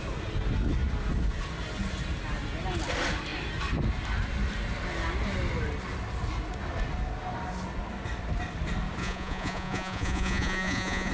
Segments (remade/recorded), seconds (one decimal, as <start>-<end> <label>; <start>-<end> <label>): 0.0-9.0 recorded; 9.0-11.1 remade